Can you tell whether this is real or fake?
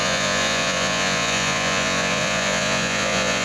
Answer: fake